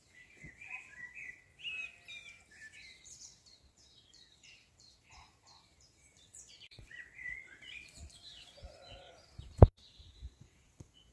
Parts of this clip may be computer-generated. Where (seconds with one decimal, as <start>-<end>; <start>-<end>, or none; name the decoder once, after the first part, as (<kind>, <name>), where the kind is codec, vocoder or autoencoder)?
0.0-1.5 (vocoder, Vocos); 3.0-11.1